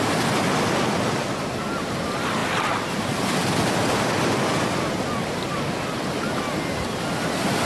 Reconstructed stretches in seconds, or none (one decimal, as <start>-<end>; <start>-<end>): none